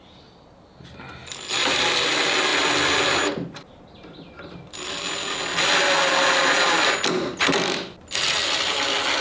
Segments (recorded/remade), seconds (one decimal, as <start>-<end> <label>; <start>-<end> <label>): 0.0-9.2 recorded